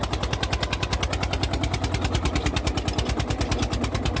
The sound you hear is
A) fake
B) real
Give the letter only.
B